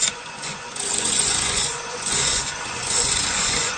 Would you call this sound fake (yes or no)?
yes